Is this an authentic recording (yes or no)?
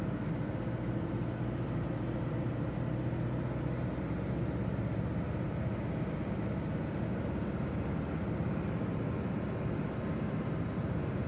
yes